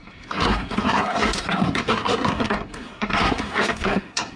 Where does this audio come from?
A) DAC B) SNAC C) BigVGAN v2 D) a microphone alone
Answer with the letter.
B